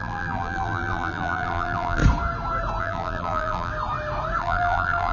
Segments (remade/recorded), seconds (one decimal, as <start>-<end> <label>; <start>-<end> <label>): 0.0-2.0 remade; 2.0-2.8 recorded; 2.8-3.7 remade; 3.7-4.4 recorded; 4.4-5.1 remade